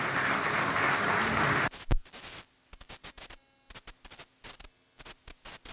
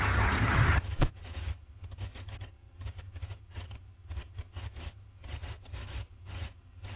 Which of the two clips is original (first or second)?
first